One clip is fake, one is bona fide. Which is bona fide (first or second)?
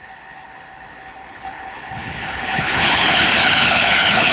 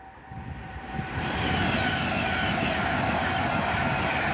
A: second